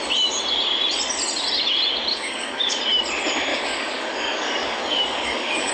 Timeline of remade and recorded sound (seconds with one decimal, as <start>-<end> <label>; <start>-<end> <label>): 0.0-2.1 recorded; 2.1-2.8 remade; 2.8-3.5 recorded; 3.5-5.7 remade